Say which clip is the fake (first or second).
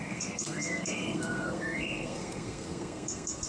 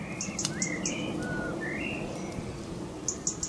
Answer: first